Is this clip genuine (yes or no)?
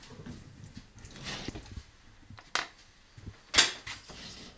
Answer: yes